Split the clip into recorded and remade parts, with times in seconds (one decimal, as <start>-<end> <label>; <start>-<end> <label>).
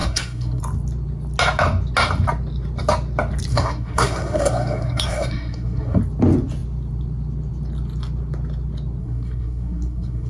0.0-0.6 remade; 0.6-3.5 recorded; 3.5-6.0 remade; 6.0-9.0 recorded; 9.0-10.3 remade